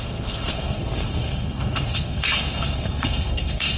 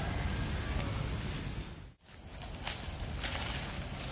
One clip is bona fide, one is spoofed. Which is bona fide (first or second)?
second